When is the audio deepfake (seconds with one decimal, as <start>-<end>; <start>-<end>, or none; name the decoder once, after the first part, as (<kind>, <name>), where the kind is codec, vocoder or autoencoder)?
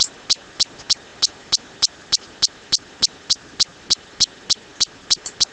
none